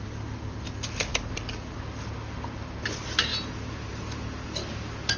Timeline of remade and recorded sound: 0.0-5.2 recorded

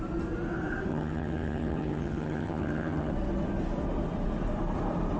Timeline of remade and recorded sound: 0.0-0.9 recorded; 0.9-3.1 remade; 3.1-5.2 recorded